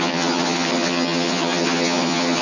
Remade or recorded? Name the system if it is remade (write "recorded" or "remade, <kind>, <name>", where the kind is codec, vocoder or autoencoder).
remade, vocoder, HiFi-GAN